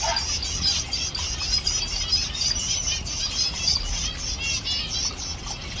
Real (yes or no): yes